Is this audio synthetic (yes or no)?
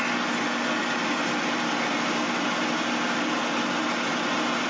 no